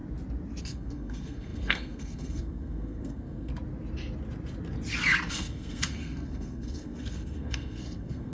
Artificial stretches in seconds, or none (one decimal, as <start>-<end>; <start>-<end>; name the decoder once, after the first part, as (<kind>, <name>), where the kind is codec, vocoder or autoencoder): 0.6-3.5 (codec, SNAC); 5.3-8.3